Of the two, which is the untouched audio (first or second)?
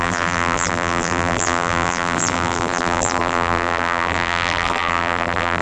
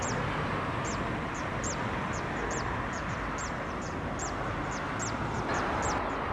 second